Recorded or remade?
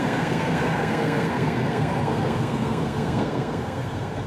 remade